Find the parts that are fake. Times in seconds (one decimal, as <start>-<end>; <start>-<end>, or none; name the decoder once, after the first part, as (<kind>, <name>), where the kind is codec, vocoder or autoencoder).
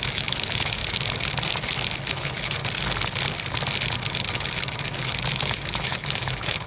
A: 0.0-0.8 (autoencoder, DAC-VAE); 2.1-2.6; 4.1-6.7